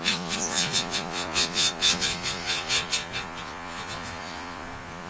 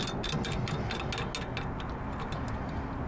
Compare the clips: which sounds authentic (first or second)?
second